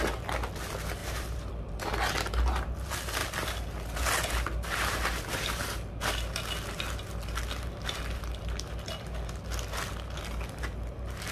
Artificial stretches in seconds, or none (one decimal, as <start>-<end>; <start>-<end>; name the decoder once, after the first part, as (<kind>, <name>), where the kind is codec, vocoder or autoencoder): 1.0-1.5 (vocoder, BigVGAN v2)